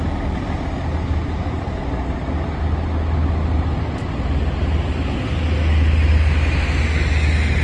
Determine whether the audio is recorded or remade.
recorded